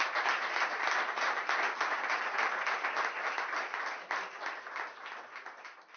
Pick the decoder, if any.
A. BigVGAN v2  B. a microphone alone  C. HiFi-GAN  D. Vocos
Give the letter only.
B